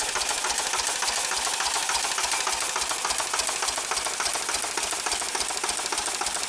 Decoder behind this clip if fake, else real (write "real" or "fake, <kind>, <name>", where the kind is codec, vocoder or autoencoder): real